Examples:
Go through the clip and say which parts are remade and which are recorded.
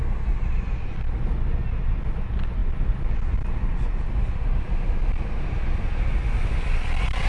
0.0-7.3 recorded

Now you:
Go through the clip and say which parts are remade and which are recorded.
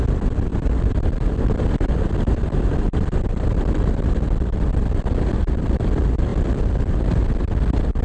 0.0-8.0 recorded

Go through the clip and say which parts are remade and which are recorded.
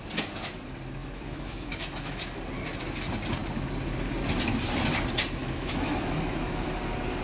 0.0-1.0 recorded; 1.0-2.4 remade; 2.4-5.4 recorded; 5.4-6.8 remade; 6.8-7.2 recorded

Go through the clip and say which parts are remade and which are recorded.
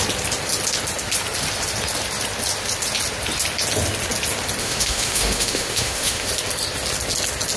0.0-4.6 recorded; 4.6-6.3 remade; 6.3-7.6 recorded